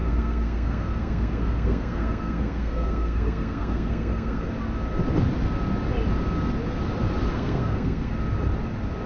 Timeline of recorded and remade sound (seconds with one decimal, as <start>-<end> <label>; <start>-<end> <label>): 0.0-4.5 remade; 4.5-7.3 recorded; 7.3-8.1 remade; 8.1-9.1 recorded